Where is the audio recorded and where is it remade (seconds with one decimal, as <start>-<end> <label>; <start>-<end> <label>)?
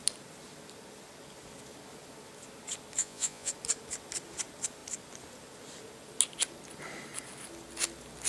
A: 0.0-3.0 recorded; 3.0-3.5 remade; 3.5-8.3 recorded